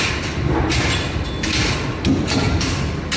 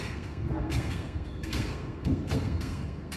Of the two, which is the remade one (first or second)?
second